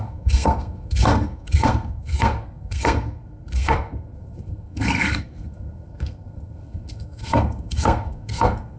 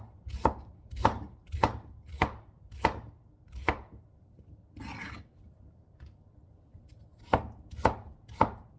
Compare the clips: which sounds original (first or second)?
second